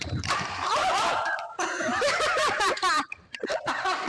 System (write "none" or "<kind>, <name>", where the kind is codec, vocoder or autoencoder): vocoder, BigVGAN v2